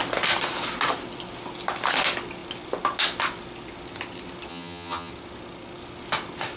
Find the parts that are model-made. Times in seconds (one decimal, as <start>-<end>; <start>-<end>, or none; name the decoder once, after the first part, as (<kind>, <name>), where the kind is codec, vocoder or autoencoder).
4.5-5.1 (vocoder, HiFi-GAN)